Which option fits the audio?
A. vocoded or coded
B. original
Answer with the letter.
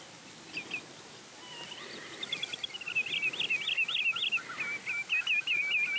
B